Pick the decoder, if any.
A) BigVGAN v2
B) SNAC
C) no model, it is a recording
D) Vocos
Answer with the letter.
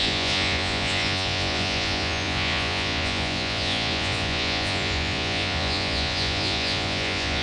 D